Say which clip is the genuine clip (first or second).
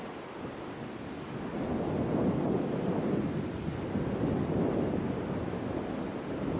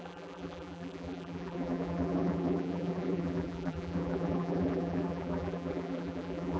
first